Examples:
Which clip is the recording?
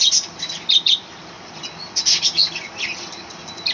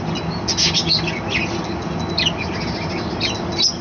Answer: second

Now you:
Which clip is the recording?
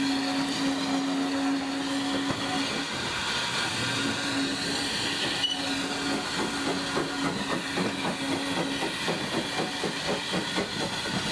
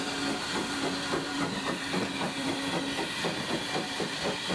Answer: first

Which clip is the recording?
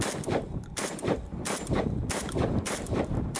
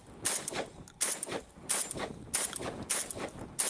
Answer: second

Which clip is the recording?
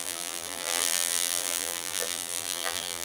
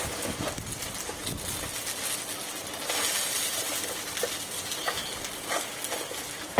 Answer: second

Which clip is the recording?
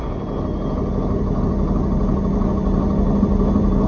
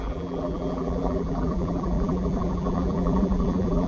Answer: first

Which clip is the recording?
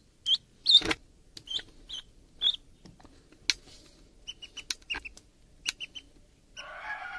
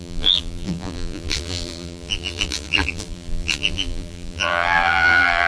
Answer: first